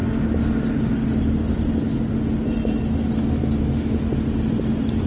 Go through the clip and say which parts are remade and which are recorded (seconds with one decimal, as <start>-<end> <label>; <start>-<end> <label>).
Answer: 0.0-5.1 recorded